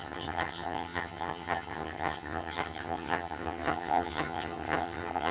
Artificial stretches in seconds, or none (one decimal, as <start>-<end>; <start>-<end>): 0.0-5.3